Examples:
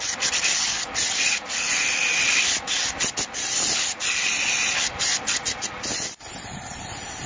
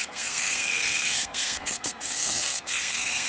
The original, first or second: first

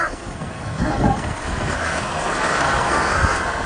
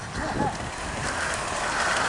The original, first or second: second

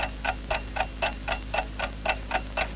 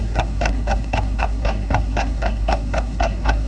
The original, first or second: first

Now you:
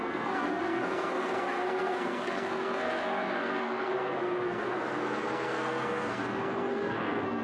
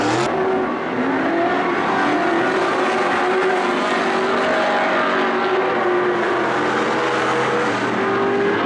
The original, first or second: second